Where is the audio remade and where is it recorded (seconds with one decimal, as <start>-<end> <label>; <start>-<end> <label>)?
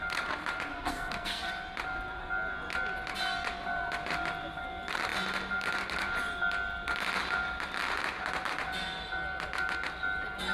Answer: 0.0-0.7 recorded; 0.7-1.5 remade; 1.5-10.5 recorded